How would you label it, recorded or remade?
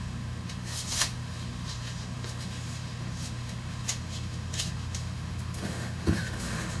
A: remade